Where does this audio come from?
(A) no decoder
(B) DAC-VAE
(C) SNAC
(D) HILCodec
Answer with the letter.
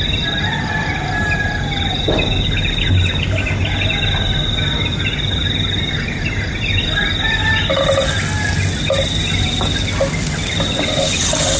A